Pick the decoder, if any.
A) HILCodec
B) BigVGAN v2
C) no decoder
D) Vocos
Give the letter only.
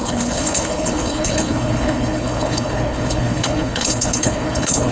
A